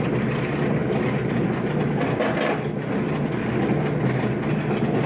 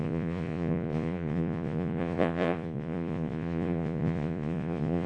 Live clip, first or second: first